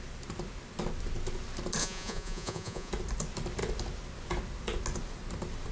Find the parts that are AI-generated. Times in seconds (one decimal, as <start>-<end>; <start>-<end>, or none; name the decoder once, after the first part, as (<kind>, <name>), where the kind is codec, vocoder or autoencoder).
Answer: 1.8-2.9 (vocoder, Vocos)